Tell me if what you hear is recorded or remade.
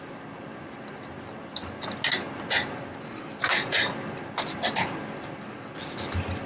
recorded